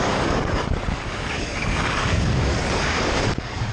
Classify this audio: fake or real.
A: fake